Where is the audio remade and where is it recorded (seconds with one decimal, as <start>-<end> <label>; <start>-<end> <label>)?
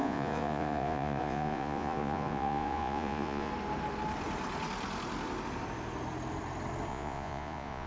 0.0-3.5 remade; 3.5-6.9 recorded; 6.9-7.9 remade